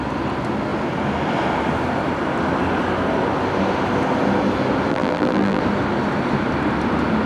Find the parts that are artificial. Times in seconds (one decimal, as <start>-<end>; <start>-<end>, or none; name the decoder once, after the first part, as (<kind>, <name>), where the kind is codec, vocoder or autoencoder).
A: 4.9-5.6 (vocoder, BigVGAN v2)